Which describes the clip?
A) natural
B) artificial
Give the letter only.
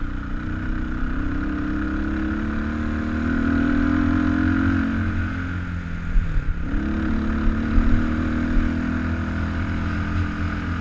A